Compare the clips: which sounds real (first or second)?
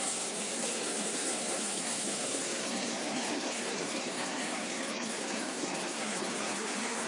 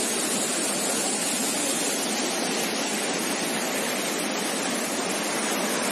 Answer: second